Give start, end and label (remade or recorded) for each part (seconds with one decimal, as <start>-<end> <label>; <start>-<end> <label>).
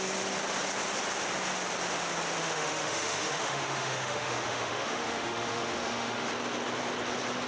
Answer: 0.0-2.4 recorded; 2.4-6.3 remade; 6.3-7.5 recorded